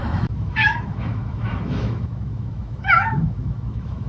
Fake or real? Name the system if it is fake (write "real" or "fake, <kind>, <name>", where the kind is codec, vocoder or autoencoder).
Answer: fake, autoencoder, DAC-VAE